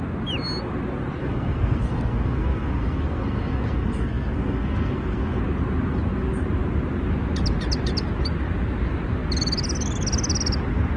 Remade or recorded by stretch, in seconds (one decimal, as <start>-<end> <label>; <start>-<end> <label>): 0.0-1.2 recorded; 1.2-5.4 remade; 5.4-11.0 recorded